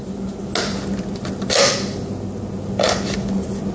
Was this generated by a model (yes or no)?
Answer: no